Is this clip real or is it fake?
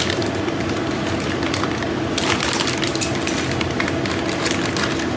real